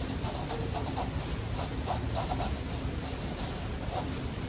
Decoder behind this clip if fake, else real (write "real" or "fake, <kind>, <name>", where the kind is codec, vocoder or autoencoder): real